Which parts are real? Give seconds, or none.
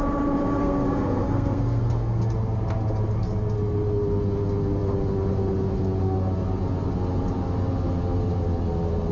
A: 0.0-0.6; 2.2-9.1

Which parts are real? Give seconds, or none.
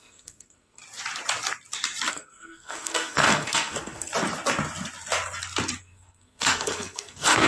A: 0.8-2.1; 4.1-5.8